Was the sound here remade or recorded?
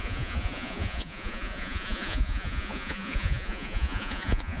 remade